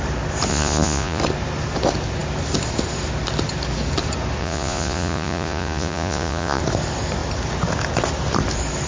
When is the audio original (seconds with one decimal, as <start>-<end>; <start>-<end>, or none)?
0.0-0.5; 1.2-4.4; 6.6-8.9